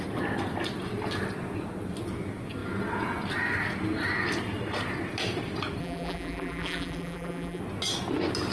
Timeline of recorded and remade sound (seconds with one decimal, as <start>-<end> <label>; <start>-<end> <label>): 0.0-5.8 recorded; 5.8-7.6 remade; 7.6-8.5 recorded